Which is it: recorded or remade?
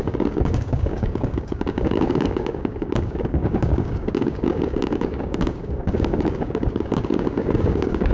remade